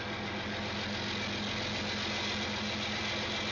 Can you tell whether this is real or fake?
real